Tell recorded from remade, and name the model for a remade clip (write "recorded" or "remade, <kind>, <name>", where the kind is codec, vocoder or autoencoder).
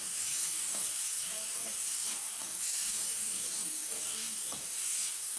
remade, codec, DAC